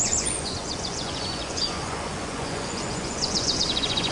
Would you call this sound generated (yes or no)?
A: yes